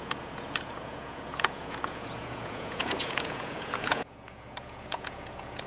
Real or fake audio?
fake